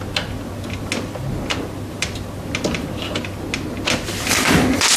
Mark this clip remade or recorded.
recorded